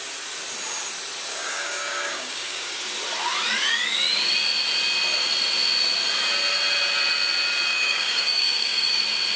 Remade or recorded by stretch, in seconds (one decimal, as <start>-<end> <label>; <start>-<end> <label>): 0.0-1.3 recorded; 1.3-2.8 remade; 2.8-7.7 recorded; 7.7-9.0 remade; 9.0-9.4 recorded